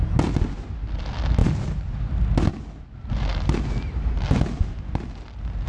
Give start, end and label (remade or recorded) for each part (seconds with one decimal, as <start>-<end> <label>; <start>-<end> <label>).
0.0-1.4 recorded; 1.4-2.1 remade; 2.1-5.7 recorded